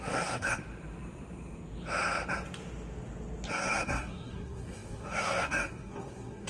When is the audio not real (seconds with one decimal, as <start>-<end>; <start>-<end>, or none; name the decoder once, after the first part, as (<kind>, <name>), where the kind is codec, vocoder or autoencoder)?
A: 0.0-0.6 (codec, SNAC); 3.5-6.5